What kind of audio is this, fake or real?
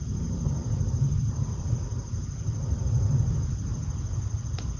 real